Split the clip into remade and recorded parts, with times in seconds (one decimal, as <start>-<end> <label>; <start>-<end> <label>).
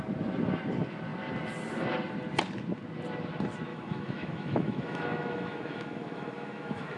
0.0-3.7 recorded; 3.7-7.0 remade